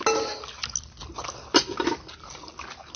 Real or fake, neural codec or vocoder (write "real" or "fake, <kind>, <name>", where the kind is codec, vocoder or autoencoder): real